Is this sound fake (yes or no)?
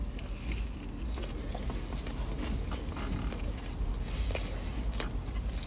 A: no